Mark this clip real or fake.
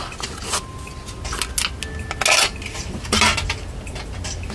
real